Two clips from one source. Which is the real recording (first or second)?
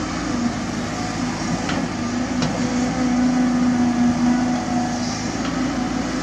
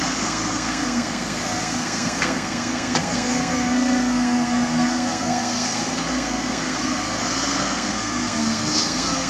first